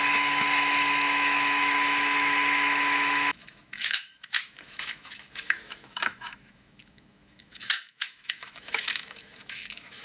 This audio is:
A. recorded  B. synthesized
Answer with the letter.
B